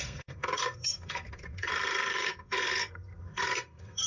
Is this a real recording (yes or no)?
no